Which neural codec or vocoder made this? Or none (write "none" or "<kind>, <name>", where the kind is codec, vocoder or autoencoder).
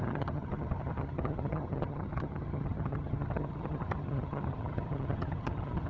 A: vocoder, HiFi-GAN